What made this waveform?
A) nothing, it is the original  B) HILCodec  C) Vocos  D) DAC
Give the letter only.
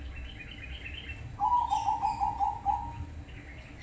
A